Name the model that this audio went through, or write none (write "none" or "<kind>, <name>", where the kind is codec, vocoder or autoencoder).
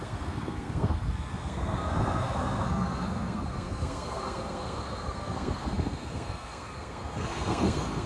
codec, SNAC